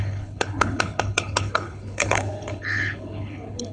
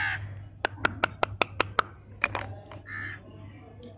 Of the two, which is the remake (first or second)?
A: first